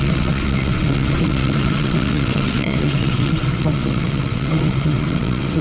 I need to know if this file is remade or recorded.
remade